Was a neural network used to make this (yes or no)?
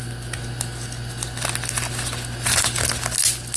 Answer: no